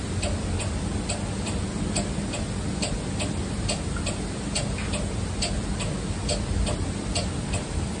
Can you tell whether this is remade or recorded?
recorded